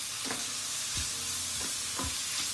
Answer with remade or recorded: recorded